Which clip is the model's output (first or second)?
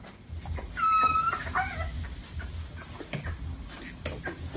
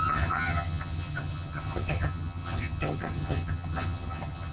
second